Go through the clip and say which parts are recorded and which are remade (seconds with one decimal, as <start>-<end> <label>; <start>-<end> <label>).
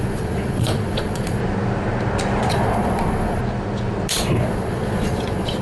0.0-1.4 remade; 1.4-2.5 recorded; 2.5-3.4 remade; 3.4-4.1 recorded; 4.1-5.6 remade